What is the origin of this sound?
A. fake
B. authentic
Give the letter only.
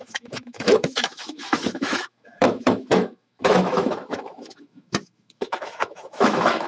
A